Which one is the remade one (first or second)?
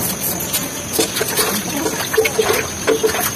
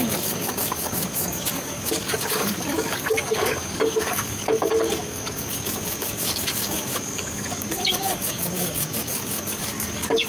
second